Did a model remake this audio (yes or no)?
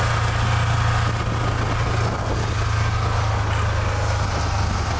no